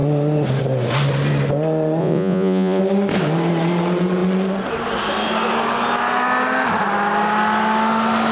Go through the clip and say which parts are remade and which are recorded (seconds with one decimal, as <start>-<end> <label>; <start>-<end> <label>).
0.0-2.0 recorded; 2.0-2.8 remade; 2.8-8.3 recorded